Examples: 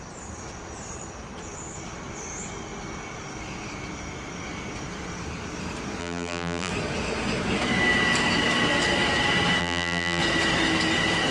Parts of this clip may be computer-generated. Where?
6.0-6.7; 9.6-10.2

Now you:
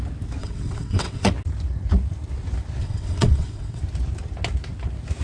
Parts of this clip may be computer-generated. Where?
0.4-1.3; 2.8-3.8

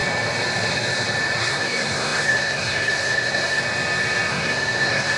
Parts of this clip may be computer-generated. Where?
1.4-3.6; 4.3-5.2

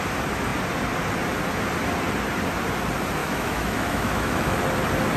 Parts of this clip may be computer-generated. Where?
3.2-4.6

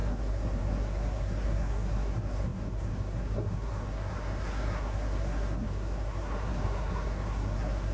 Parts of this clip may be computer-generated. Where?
0.0-7.9

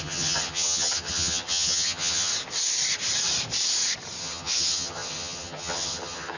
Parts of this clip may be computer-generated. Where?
0.0-2.3; 4.2-6.4